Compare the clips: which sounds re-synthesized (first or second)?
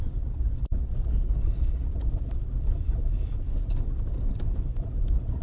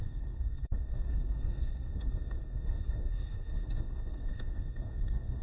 second